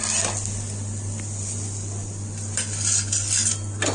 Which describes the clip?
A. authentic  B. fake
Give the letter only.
A